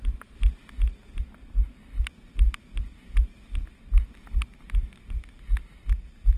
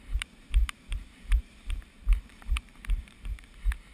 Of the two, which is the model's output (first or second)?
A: second